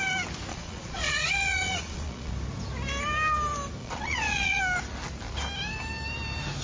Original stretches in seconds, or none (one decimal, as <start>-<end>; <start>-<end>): 0.0-0.5; 2.3-3.8; 4.6-6.6